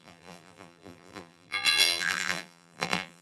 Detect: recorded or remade remade